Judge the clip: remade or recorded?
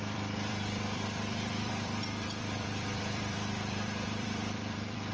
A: remade